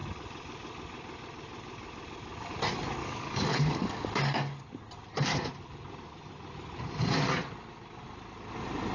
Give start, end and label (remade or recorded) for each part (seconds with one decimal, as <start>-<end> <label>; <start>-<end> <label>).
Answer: 0.0-3.0 recorded; 3.0-4.6 remade; 4.6-8.9 recorded